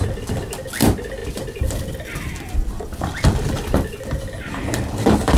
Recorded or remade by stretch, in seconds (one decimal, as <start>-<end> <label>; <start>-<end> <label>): 0.0-5.4 recorded